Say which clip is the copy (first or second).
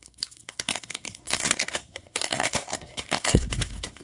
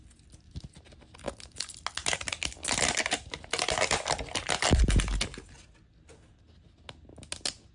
first